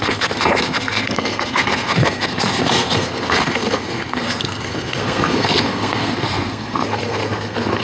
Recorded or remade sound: remade